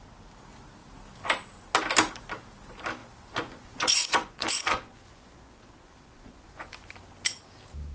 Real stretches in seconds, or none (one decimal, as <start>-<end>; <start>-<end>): 0.0-3.0; 6.7-7.9